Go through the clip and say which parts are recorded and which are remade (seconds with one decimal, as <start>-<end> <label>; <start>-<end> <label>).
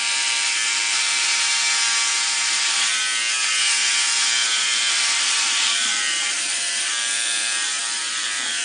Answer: 0.0-1.3 remade; 1.3-4.8 recorded; 4.8-8.6 remade